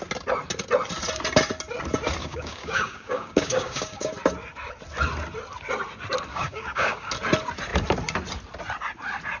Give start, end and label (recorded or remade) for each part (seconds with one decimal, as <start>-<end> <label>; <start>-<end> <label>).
0.0-2.2 recorded; 2.2-4.1 remade; 4.1-6.3 recorded; 6.3-7.1 remade; 7.1-9.4 recorded